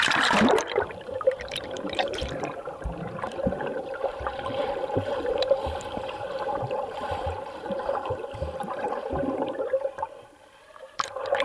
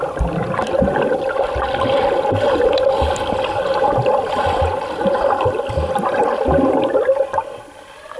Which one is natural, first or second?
second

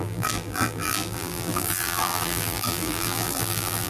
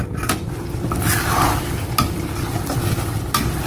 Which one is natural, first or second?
second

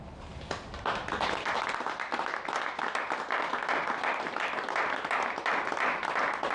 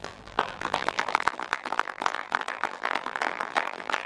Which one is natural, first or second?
first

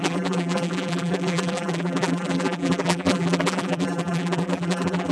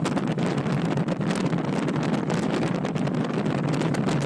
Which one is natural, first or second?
second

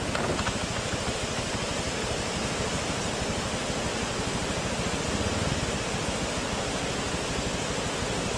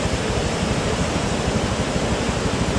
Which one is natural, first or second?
first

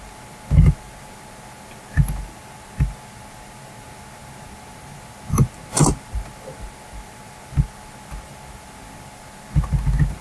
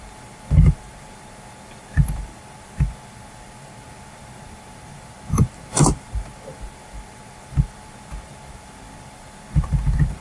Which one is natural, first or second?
first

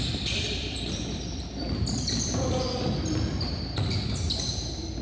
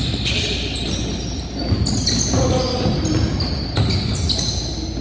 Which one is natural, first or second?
second